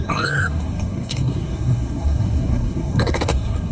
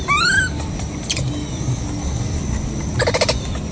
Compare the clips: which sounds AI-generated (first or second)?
first